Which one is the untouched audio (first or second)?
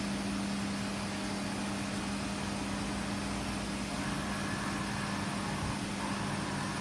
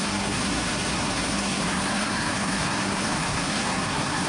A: first